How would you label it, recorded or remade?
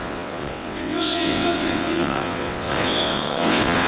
remade